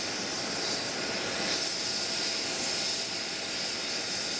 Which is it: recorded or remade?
recorded